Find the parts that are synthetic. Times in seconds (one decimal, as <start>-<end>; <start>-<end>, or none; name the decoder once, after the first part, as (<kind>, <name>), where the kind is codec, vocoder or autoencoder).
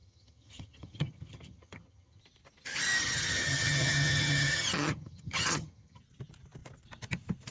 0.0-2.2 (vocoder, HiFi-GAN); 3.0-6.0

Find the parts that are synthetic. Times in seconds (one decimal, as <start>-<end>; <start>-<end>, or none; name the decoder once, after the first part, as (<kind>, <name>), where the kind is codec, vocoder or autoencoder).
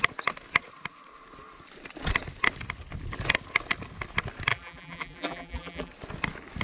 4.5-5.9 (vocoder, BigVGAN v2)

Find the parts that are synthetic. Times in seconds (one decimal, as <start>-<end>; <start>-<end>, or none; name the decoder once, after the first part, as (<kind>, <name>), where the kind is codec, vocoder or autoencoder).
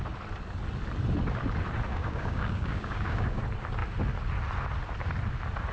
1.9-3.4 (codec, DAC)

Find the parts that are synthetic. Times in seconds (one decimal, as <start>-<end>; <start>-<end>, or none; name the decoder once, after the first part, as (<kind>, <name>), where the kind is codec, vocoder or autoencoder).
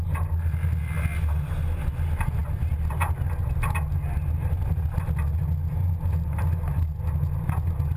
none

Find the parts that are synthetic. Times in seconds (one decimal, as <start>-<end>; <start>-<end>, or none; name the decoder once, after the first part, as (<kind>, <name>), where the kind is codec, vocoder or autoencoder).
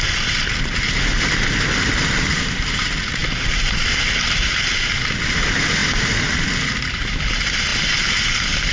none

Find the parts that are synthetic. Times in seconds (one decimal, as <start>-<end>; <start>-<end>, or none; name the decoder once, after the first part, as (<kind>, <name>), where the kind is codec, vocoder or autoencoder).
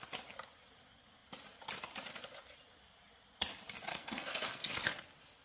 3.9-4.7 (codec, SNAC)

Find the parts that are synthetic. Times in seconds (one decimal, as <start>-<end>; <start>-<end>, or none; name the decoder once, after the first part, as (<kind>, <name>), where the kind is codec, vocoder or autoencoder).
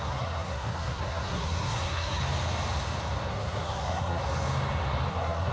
0.0-2.2 (codec, SNAC); 3.3-4.2; 5.1-5.5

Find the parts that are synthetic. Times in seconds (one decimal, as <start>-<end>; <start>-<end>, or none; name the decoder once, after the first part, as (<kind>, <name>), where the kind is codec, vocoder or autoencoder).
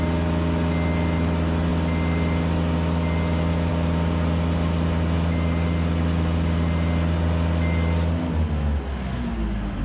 none